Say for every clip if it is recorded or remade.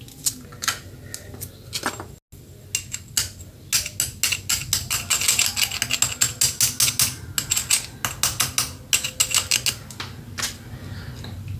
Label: recorded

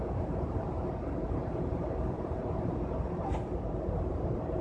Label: remade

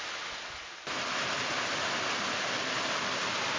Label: recorded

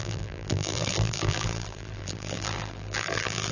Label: remade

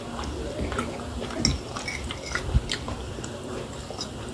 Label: recorded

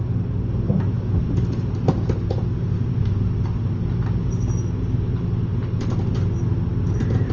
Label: recorded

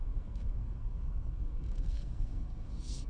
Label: remade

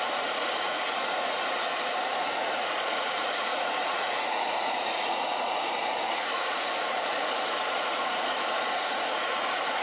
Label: remade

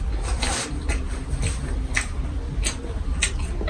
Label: recorded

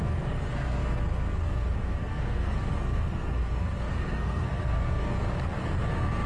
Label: remade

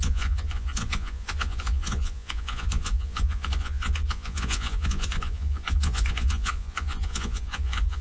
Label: remade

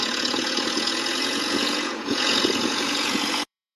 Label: remade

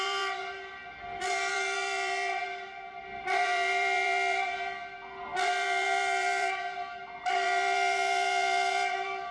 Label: remade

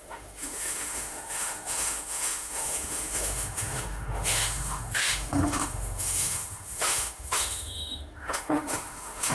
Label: remade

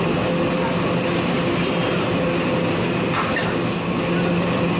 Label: recorded